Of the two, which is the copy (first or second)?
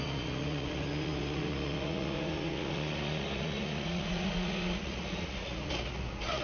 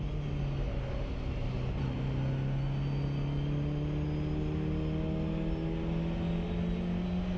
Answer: first